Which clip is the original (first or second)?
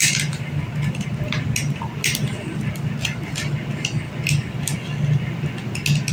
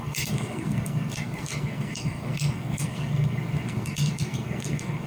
first